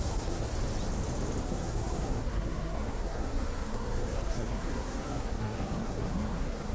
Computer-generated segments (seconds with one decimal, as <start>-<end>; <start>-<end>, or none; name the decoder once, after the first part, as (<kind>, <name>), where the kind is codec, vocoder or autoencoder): 0.0-0.5 (codec, SNAC); 1.4-6.7